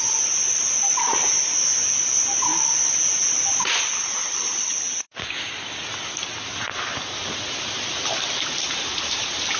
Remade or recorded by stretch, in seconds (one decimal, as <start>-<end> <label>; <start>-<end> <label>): 0.0-2.5 recorded; 2.5-3.8 remade; 3.8-4.7 recorded; 4.7-5.9 remade; 5.9-9.6 recorded